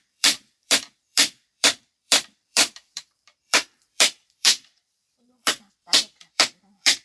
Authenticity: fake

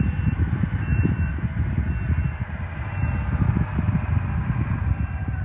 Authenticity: real